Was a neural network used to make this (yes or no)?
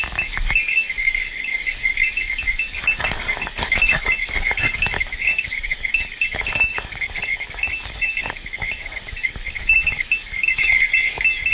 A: yes